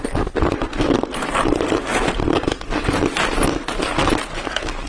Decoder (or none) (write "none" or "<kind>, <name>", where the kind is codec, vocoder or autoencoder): none